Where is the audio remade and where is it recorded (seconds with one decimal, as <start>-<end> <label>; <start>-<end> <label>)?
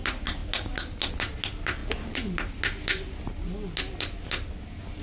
0.0-5.0 recorded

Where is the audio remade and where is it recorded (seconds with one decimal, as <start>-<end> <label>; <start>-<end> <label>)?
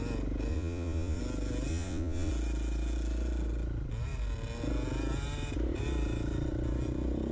0.0-0.5 recorded; 0.5-1.2 remade; 1.2-1.7 recorded; 1.7-2.3 remade; 2.3-7.3 recorded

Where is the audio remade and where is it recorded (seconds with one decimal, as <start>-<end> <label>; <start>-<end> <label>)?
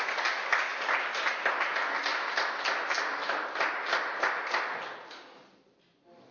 0.0-6.3 recorded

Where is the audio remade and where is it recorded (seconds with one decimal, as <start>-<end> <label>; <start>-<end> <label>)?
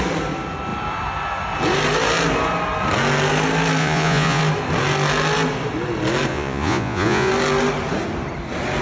0.0-3.8 recorded; 3.8-4.4 remade; 4.4-6.3 recorded; 6.3-7.3 remade; 7.3-8.8 recorded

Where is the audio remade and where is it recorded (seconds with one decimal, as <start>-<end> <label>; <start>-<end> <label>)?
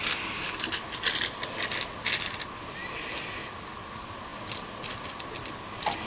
0.0-6.1 recorded